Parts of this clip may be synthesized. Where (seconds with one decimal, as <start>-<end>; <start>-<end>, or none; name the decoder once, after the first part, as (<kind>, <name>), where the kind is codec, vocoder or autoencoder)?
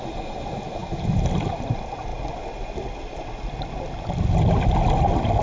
none